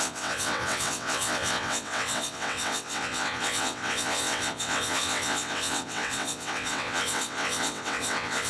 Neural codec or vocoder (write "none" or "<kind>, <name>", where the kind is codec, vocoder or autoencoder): vocoder, WaveNeXt